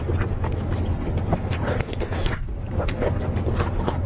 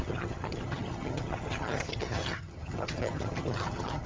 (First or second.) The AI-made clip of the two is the second